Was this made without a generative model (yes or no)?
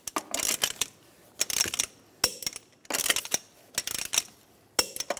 yes